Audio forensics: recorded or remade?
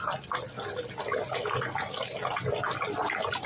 recorded